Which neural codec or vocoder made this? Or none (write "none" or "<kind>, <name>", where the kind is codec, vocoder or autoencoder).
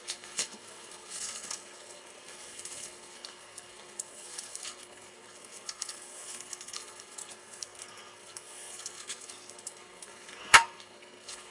codec, SNAC